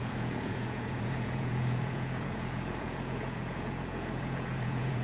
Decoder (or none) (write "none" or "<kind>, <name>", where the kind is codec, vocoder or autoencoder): vocoder, Vocos